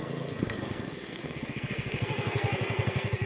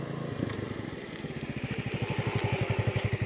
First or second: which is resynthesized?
first